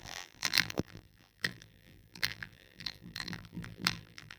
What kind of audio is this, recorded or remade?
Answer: remade